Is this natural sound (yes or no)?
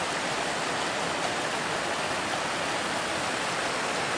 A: yes